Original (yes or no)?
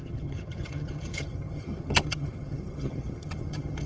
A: no